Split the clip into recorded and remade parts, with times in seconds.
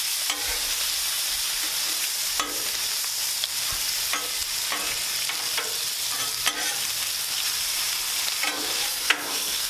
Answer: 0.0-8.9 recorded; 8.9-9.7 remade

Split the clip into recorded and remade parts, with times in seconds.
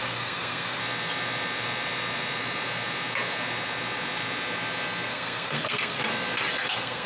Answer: 0.0-0.8 remade; 0.8-5.1 recorded; 5.1-6.0 remade; 6.0-6.6 recorded; 6.6-7.1 remade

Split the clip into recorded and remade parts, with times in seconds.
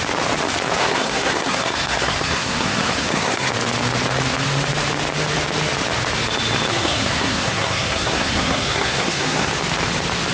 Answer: 0.0-0.8 recorded; 0.8-3.5 remade; 3.5-6.7 recorded; 6.7-9.5 remade; 9.5-10.3 recorded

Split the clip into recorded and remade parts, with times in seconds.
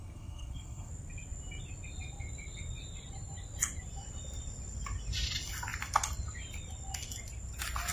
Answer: 0.0-0.9 remade; 0.9-7.9 recorded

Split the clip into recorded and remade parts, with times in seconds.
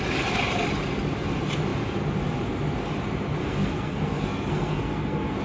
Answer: 0.0-3.4 recorded; 3.4-5.4 remade